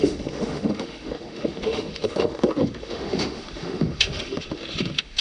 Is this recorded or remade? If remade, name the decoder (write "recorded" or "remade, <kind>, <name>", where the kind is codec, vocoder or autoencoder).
remade, autoencoder, DAC-VAE